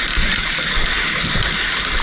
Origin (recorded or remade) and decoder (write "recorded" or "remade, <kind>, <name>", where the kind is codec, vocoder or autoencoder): recorded